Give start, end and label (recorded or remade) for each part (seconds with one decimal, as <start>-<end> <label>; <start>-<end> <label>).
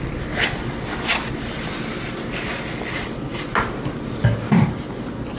0.0-5.4 recorded